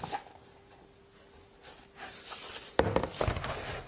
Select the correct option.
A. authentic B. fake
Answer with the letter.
A